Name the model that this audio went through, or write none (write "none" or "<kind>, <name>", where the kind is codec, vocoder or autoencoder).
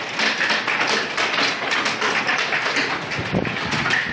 none